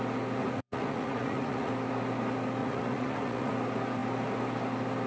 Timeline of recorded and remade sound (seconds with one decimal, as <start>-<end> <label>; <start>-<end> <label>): 0.0-0.4 recorded; 0.4-1.7 remade; 1.7-2.6 recorded; 2.6-3.5 remade; 3.5-5.1 recorded